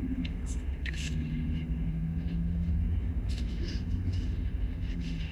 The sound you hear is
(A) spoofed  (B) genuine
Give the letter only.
A